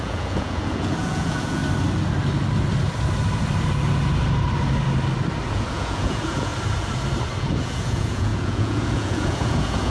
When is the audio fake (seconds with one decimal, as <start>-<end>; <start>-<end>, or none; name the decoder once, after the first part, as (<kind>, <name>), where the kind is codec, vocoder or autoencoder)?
0.0-1.6 (vocoder, Vocos); 5.5-6.5; 7.4-9.9